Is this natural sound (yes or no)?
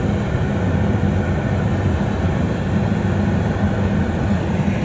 yes